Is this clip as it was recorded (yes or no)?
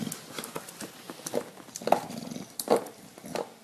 yes